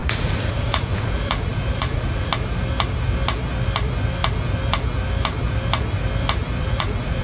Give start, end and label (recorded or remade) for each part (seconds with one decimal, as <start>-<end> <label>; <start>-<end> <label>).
0.0-2.3 remade; 2.3-6.6 recorded; 6.6-7.2 remade